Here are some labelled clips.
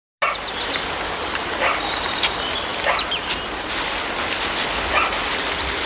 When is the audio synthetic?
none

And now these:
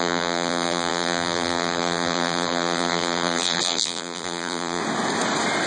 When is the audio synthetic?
0.0-4.8 (vocoder, BigVGAN v2)

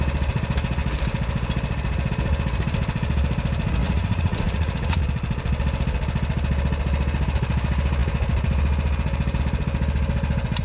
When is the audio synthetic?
3.8-5.0 (vocoder, Vocos)

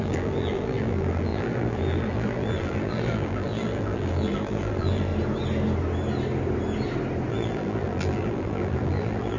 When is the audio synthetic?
0.0-5.1 (vocoder, BigVGAN v2); 7.3-9.4

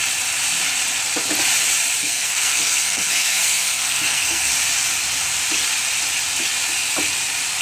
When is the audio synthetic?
2.0-4.5 (codec, SNAC)

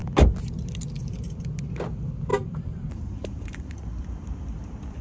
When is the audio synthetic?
2.3-3.8 (vocoder, BigVGAN v2)